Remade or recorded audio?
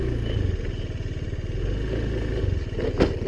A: recorded